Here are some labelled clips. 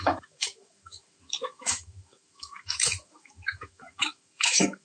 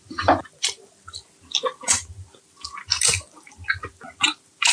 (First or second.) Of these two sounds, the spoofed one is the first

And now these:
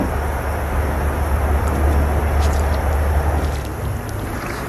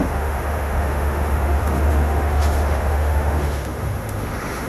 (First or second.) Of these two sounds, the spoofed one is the second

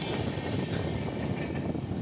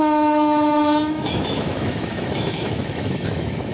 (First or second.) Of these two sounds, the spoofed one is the second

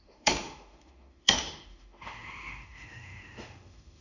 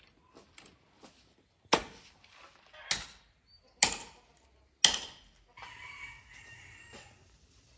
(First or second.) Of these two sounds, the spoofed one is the first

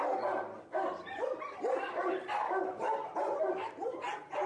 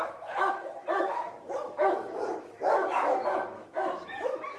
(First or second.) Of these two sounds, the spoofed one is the second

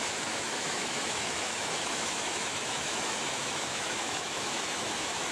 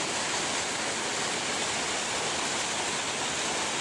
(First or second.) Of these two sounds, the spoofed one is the first